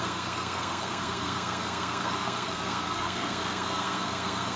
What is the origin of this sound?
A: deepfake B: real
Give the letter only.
A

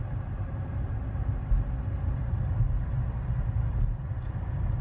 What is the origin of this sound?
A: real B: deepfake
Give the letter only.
A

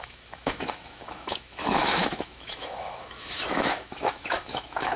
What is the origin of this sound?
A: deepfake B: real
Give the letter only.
A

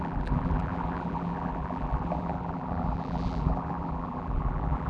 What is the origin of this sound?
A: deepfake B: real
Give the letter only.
A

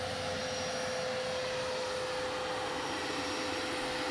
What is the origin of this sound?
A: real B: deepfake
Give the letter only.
A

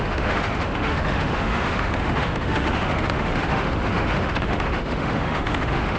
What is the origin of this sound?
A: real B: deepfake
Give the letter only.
B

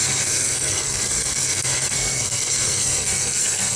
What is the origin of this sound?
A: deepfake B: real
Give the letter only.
A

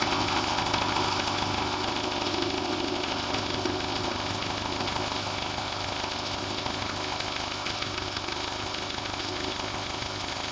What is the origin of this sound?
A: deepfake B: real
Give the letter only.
A